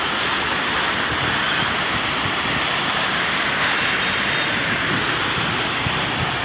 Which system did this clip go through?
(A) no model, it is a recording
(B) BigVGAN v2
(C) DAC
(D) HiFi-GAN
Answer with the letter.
A